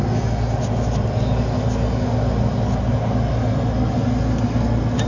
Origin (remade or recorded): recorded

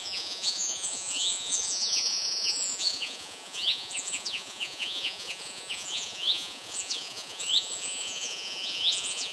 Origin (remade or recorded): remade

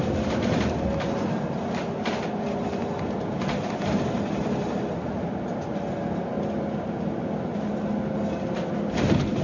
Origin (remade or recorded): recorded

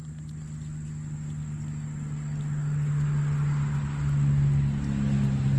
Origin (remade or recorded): recorded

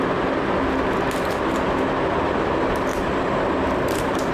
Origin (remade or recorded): recorded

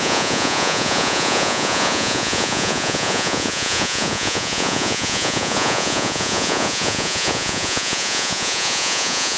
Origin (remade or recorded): remade